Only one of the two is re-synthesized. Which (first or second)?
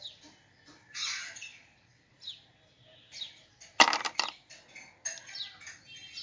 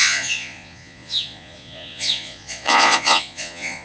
second